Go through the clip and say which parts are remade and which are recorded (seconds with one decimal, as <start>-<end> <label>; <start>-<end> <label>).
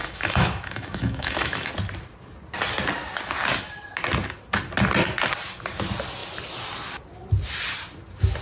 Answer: 0.0-1.7 remade; 1.7-8.4 recorded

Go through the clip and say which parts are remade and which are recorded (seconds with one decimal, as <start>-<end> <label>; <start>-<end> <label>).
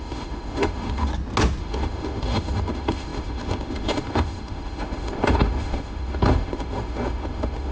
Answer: 0.0-1.1 remade; 1.1-1.6 recorded; 1.6-7.7 remade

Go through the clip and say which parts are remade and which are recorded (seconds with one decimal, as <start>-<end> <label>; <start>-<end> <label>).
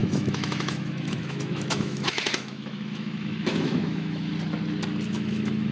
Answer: 0.0-4.3 remade; 4.3-5.1 recorded; 5.1-5.7 remade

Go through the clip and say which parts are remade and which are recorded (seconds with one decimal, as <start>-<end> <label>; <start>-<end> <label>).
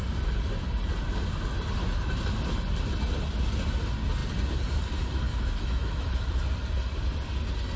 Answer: 0.0-5.3 recorded; 5.3-6.3 remade; 6.3-7.8 recorded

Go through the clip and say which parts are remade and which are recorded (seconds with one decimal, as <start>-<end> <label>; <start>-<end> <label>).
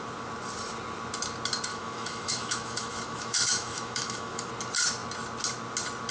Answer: 0.0-1.7 recorded; 1.7-4.5 remade; 4.5-6.1 recorded